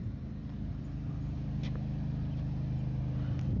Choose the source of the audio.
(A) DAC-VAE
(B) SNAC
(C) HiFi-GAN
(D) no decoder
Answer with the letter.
D